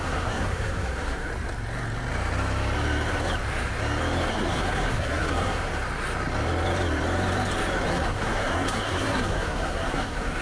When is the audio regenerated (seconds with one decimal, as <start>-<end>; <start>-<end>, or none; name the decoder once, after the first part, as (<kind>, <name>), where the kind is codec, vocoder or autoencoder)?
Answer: 0.0-1.3 (codec, SNAC); 4.3-5.7; 7.9-10.4